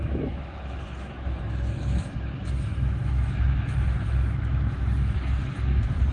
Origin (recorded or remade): remade